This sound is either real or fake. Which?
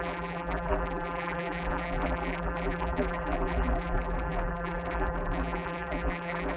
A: fake